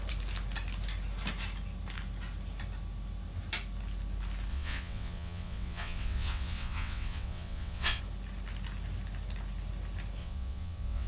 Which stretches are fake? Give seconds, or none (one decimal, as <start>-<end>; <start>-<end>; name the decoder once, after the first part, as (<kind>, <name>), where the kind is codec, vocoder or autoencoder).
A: 4.5-8.0 (vocoder, WaveNeXt); 10.2-11.1